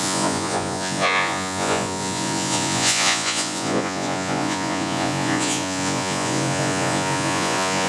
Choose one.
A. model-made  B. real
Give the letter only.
A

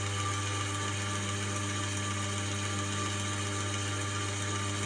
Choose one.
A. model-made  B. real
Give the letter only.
B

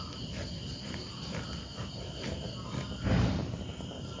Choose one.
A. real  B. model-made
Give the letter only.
A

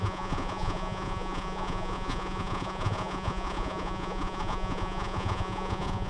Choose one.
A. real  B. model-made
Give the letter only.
B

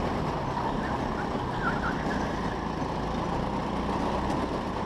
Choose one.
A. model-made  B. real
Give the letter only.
B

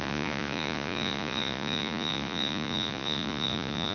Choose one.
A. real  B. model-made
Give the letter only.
B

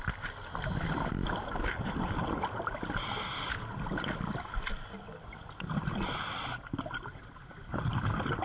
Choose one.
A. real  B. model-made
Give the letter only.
A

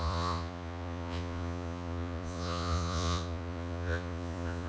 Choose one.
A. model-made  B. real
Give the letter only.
A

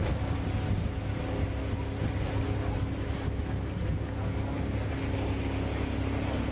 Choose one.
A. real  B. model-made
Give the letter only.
A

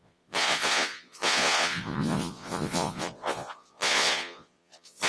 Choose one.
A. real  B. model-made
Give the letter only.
B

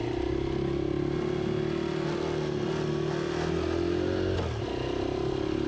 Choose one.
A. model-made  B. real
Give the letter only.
B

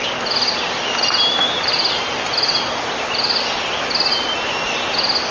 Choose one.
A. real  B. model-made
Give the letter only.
A